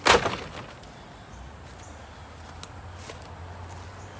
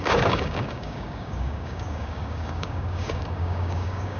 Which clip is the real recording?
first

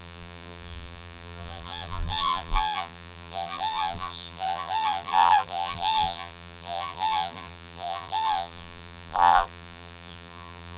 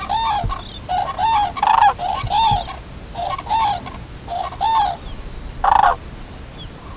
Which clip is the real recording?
second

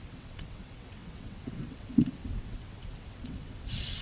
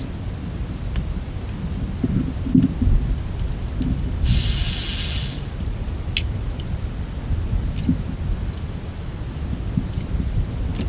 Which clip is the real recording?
second